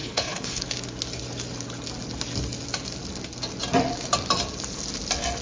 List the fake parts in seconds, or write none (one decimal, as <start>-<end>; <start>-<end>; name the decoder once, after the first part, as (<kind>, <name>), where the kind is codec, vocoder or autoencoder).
0.0-0.6 (codec, HILCodec)